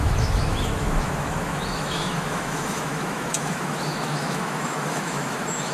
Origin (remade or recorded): remade